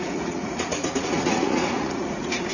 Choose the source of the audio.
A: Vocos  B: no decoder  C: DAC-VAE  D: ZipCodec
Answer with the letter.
A